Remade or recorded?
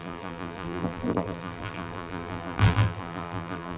remade